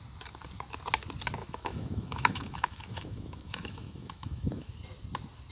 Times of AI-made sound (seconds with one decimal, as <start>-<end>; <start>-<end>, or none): 1.4-4.7